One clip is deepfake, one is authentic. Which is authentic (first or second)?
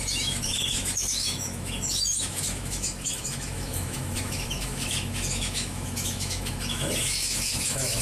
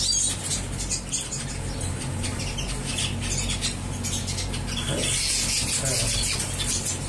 second